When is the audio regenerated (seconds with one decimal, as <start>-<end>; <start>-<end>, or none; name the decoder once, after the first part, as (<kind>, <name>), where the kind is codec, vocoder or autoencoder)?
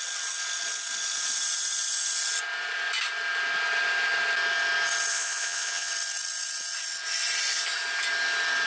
5.1-5.9 (vocoder, Vocos)